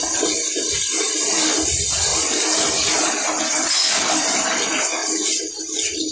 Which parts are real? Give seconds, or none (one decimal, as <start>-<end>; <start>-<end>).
0.0-6.1